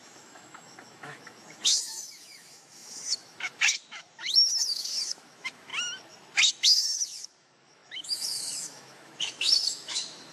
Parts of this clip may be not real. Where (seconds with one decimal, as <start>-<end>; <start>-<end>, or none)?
0.0-5.7; 6.5-10.3